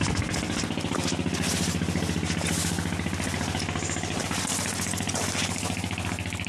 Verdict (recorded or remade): recorded